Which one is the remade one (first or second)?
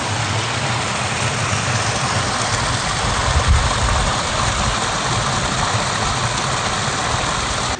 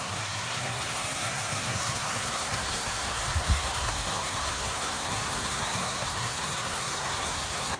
second